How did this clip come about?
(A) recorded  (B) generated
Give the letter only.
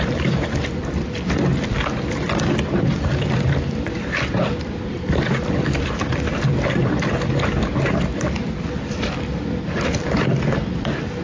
B